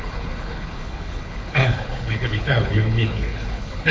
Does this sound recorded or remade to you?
remade